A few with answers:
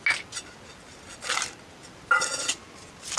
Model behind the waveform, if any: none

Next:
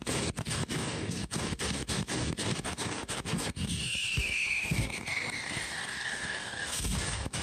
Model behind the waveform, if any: codec, DAC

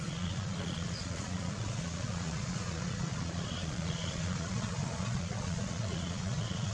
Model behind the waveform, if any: vocoder, Vocos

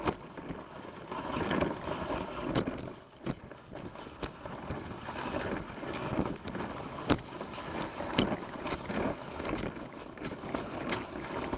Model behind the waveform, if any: none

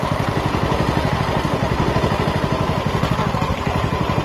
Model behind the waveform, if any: none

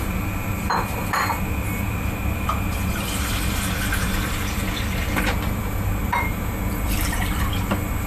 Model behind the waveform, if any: vocoder, BigVGAN v2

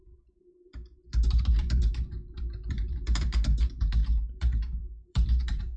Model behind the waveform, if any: vocoder, BigVGAN v2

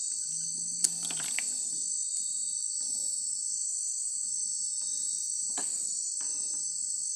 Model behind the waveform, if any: none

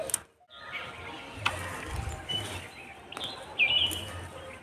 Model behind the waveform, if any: none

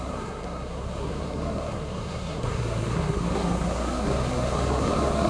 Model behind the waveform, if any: codec, SNAC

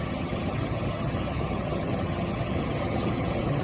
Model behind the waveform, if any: vocoder, HiFi-GAN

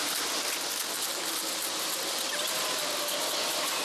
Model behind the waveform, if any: none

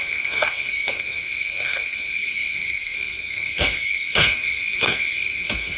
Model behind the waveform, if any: codec, SNAC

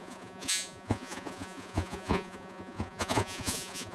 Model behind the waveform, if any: vocoder, Vocos